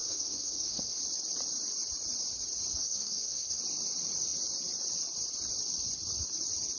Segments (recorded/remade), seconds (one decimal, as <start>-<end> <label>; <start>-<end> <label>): 0.0-1.0 remade; 1.0-2.7 recorded; 2.7-3.6 remade; 3.6-6.8 recorded